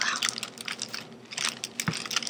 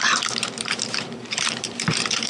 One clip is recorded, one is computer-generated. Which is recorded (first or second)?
first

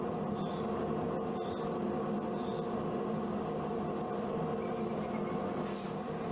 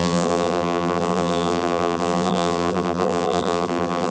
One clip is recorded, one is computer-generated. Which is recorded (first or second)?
first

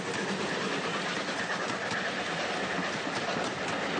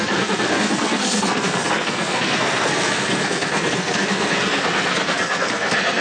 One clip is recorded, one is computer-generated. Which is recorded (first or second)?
first